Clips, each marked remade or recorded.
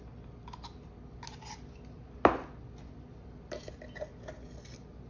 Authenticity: recorded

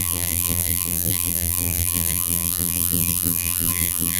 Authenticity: remade